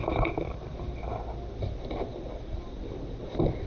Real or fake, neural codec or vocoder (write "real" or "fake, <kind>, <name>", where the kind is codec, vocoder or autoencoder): real